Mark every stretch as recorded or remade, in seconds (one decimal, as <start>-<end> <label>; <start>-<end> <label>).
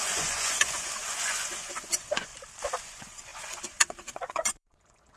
0.0-2.3 remade; 2.3-2.8 recorded; 2.8-5.2 remade